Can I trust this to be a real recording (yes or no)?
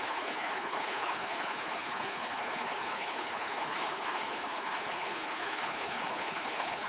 no